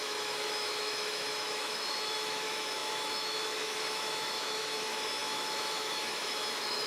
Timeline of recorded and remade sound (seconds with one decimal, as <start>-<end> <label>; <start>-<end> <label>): 0.0-6.9 remade

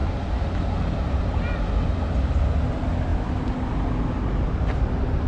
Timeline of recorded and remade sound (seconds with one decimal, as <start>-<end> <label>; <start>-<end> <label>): 0.0-5.3 recorded

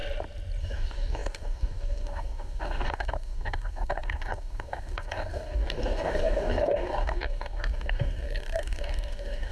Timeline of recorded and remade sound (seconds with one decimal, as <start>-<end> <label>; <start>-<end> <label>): 0.0-0.6 recorded; 0.6-9.5 remade

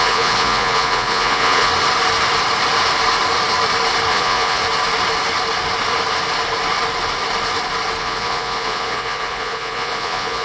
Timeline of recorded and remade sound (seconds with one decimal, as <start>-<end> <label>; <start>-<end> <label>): 0.0-1.7 remade; 1.7-4.1 recorded; 4.1-4.6 remade; 4.6-8.0 recorded; 8.0-10.4 remade

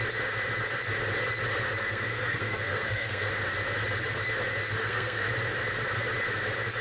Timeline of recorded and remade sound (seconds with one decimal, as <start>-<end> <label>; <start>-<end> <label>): 0.0-1.8 recorded; 1.8-3.3 remade; 3.3-4.8 recorded; 4.8-5.3 remade; 5.3-6.8 recorded

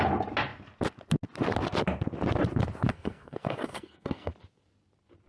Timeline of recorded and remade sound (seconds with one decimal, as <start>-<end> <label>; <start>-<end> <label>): 0.0-2.9 recorded; 2.9-4.3 remade; 4.3-5.3 recorded

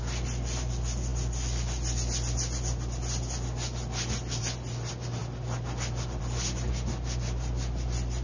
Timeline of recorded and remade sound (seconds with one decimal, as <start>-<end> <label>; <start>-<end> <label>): 0.0-8.2 recorded